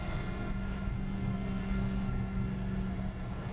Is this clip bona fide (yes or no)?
no